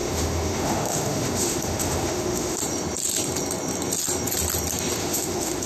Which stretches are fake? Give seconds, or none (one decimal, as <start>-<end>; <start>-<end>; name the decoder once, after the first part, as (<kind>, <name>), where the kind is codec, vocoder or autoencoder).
0.0-2.6 (autoencoder, DAC-VAE); 5.0-5.7